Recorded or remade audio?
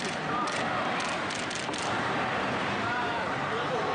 remade